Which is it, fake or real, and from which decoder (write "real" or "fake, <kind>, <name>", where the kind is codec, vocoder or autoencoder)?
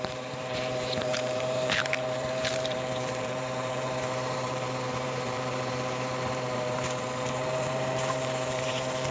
fake, vocoder, BigVGAN v2